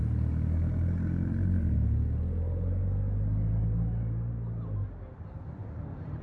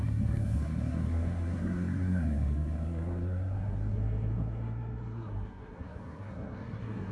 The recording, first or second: first